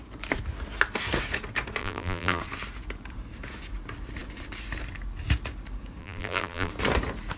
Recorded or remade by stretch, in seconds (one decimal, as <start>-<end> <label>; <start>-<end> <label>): 0.0-1.8 recorded; 1.8-2.4 remade; 2.4-6.0 recorded; 6.0-6.7 remade; 6.7-7.4 recorded